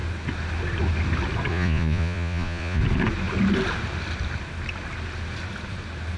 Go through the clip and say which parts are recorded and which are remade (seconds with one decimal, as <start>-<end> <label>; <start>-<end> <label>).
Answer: 0.0-1.5 recorded; 1.5-2.8 remade; 2.8-6.2 recorded